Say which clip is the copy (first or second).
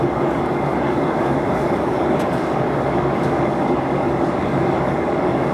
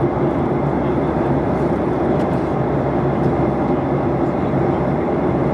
first